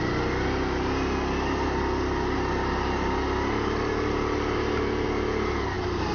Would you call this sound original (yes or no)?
yes